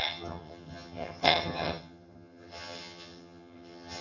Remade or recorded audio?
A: remade